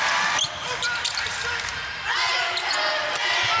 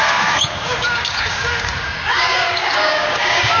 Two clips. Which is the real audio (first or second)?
first